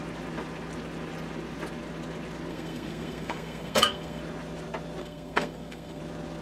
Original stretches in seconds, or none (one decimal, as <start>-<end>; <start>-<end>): 0.0-2.5; 4.2-5.0; 6.0-6.4